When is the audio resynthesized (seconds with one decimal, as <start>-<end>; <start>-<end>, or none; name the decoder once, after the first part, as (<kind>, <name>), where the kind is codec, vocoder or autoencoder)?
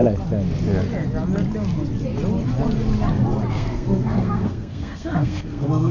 3.5-5.9 (codec, SNAC)